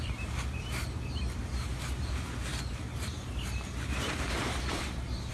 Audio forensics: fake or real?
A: fake